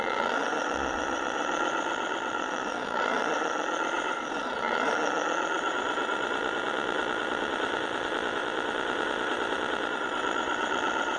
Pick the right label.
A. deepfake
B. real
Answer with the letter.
A